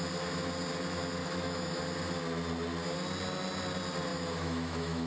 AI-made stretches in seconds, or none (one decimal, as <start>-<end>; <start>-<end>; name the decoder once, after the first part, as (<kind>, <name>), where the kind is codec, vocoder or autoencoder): 1.2-1.8 (autoencoder, DAC-VAE); 4.1-5.1